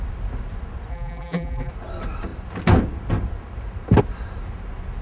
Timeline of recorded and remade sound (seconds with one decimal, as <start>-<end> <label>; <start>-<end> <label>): 0.0-0.9 recorded; 0.9-1.7 remade; 1.7-5.0 recorded